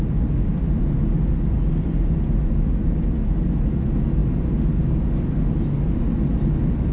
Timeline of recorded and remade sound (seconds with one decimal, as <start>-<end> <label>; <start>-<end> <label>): 0.0-6.9 recorded